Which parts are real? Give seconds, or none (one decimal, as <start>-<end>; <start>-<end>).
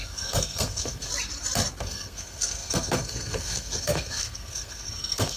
1.1-1.8